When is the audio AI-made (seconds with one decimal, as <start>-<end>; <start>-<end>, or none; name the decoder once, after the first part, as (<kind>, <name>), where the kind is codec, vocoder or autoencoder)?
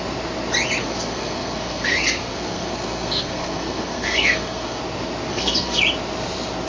0.8-4.8 (codec, SNAC); 5.3-5.8